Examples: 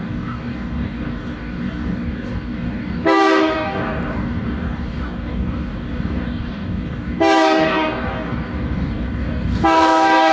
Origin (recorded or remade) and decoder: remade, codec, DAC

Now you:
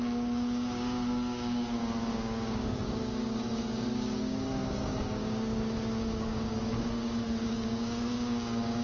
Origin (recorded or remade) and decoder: remade, codec, DAC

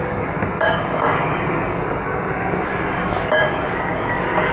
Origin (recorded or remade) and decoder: remade, codec, DAC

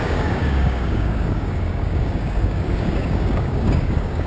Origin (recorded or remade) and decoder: remade, codec, DAC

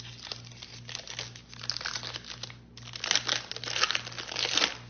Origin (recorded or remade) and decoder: recorded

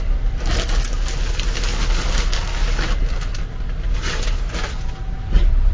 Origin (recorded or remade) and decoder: recorded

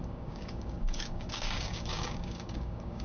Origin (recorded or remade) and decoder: remade, codec, DAC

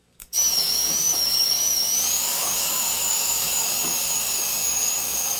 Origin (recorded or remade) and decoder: remade, codec, DAC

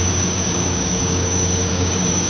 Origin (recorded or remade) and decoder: remade, codec, DAC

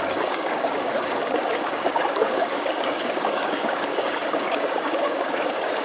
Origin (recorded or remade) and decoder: remade, codec, DAC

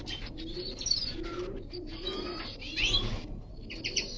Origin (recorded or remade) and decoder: recorded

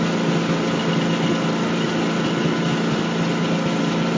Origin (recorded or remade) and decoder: recorded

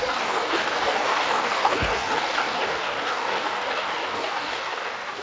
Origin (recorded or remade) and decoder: remade, codec, DAC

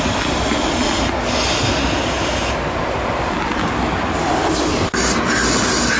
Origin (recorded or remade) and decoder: recorded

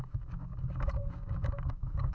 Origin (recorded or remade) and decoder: remade, codec, DAC